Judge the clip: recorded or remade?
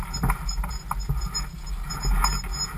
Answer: recorded